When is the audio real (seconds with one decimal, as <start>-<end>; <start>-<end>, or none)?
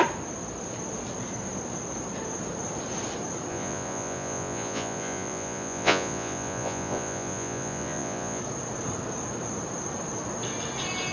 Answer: 0.0-3.5; 8.4-11.1